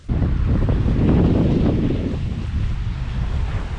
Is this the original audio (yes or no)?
yes